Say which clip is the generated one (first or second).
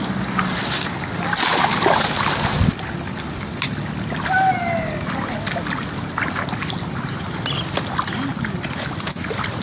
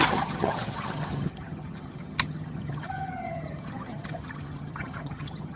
second